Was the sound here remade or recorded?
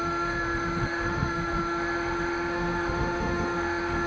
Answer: remade